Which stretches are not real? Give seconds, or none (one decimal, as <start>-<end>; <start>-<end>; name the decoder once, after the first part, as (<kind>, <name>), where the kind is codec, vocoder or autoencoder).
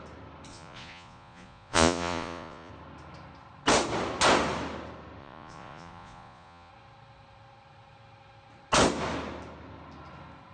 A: 0.5-2.7 (vocoder, Vocos); 5.2-6.7